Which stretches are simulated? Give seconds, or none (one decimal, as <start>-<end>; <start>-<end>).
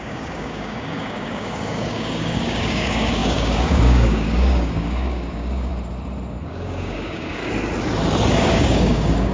0.0-5.7; 6.4-7.4; 8.3-9.3